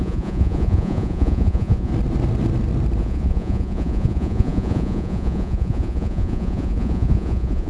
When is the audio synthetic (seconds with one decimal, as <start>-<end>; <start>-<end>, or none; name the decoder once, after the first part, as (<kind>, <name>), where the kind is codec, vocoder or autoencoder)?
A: 0.0-1.9 (vocoder, Vocos); 3.0-7.7